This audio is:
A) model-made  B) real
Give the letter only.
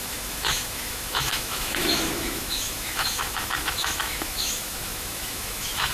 A